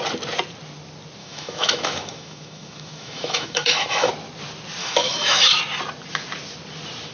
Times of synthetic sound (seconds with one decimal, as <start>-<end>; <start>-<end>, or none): 1.2-4.1; 4.8-5.6

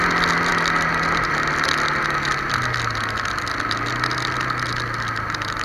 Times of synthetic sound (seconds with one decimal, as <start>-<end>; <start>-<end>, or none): none

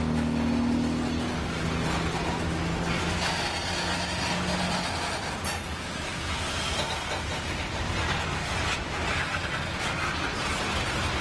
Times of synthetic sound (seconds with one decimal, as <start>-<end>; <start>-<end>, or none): none

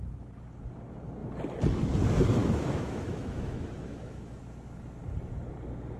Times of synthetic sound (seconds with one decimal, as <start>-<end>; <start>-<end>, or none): 2.4-4.4

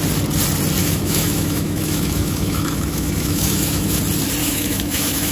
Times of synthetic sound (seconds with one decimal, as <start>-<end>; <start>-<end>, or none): 0.8-4.0; 4.4-5.3

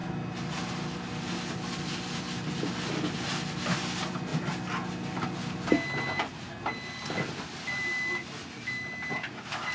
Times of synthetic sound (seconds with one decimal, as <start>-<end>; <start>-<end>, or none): none

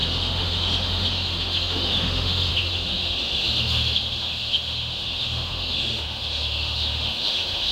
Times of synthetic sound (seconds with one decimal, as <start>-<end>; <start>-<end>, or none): 0.0-7.7

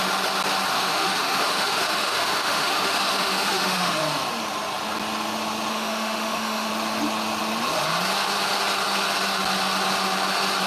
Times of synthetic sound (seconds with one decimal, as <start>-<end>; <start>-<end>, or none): 0.7-4.0; 5.7-6.7